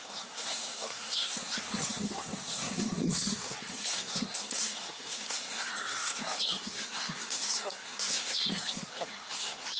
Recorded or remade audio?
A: remade